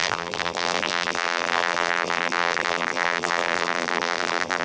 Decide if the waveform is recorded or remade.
remade